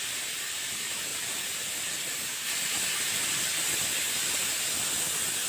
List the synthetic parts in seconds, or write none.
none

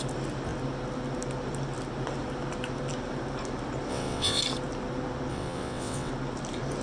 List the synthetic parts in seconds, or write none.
3.9-4.4; 5.3-6.1

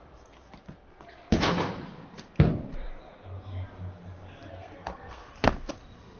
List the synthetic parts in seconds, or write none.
4.5-5.3